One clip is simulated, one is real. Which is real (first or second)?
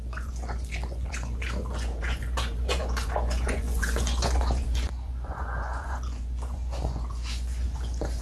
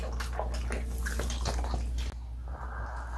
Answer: second